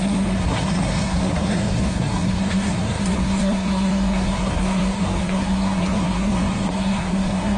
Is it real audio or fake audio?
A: fake